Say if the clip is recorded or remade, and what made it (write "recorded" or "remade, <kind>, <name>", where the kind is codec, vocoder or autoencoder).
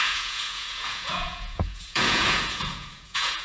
remade, vocoder, Vocos